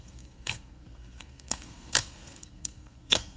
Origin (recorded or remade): remade